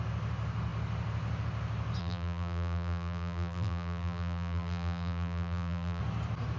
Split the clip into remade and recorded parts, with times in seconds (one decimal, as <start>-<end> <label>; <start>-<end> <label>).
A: 0.0-2.0 recorded; 2.0-6.0 remade; 6.0-6.6 recorded